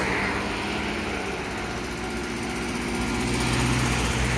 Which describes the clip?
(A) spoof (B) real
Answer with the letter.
B